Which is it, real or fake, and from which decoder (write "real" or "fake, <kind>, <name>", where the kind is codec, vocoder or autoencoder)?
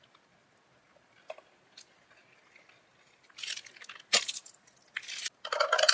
real